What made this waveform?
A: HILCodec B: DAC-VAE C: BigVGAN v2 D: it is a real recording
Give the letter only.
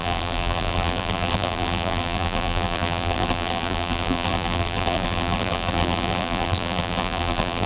C